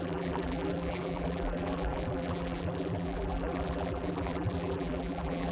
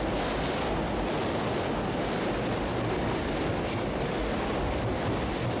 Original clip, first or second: second